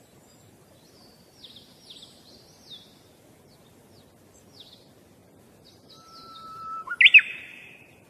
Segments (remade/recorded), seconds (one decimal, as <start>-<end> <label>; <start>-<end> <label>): 0.0-8.1 recorded